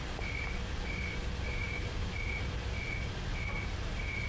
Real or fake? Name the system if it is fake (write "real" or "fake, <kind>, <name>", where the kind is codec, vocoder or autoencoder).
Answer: real